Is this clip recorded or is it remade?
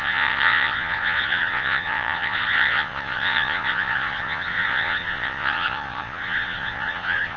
remade